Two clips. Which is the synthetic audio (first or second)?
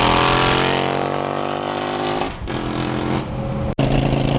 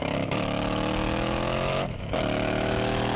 second